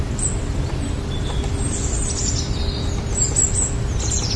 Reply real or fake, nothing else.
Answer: real